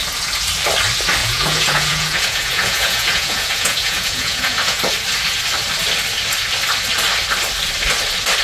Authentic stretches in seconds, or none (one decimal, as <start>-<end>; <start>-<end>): 0.0-1.2; 4.8-8.4